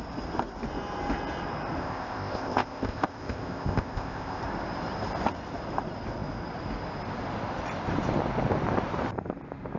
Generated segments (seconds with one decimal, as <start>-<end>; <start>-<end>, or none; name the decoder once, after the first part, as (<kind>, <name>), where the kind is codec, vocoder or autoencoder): 1.8-4.4 (codec, ZipCodec)